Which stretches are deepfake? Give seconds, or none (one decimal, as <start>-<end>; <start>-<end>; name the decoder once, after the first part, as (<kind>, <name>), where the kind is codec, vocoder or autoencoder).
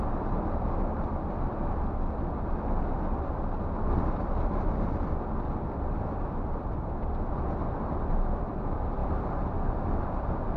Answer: none